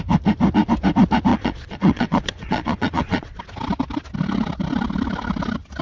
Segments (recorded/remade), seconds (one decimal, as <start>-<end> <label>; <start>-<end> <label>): 0.0-1.3 recorded; 1.3-3.4 remade; 3.4-5.8 recorded